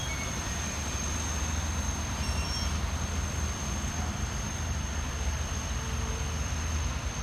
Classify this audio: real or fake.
fake